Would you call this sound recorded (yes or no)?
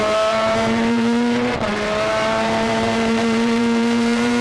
no